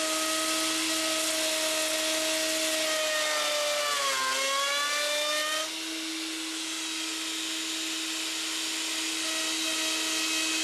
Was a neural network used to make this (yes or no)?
no